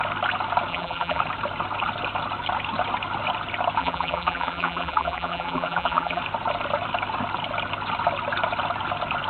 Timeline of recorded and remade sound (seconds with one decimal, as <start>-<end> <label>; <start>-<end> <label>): 0.0-0.7 recorded; 0.7-1.2 remade; 1.2-3.8 recorded; 3.8-6.2 remade; 6.2-9.3 recorded